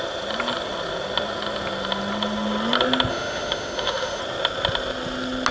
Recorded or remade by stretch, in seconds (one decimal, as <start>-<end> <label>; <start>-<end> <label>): 0.0-3.1 recorded; 3.1-4.2 remade; 4.2-5.5 recorded